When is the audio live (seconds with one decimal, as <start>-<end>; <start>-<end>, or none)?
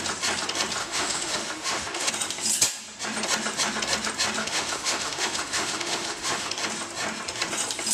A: 0.0-0.8; 2.1-4.4; 6.5-7.9